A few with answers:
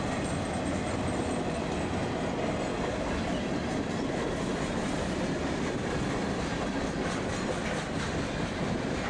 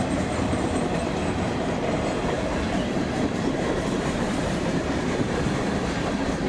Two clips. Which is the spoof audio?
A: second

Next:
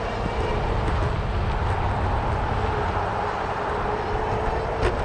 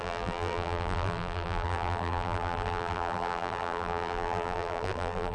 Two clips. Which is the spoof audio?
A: second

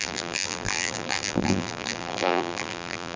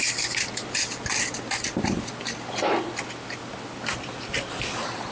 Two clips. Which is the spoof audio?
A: first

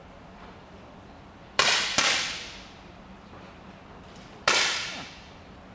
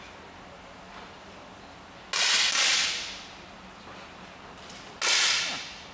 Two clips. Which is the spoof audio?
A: first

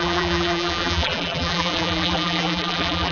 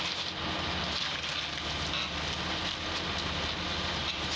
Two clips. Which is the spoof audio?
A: first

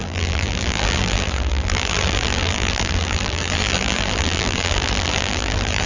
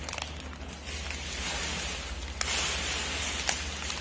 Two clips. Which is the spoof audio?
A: first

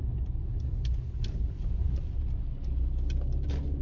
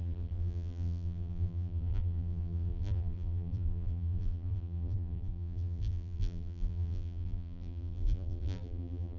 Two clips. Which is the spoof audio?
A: second